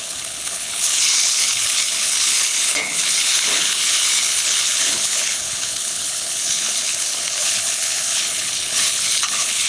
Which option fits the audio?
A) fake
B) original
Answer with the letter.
A